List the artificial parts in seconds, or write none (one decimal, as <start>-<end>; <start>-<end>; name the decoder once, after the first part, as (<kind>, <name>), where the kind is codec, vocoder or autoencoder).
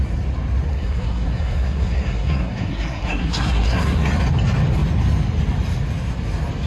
0.7-4.1 (codec, SNAC)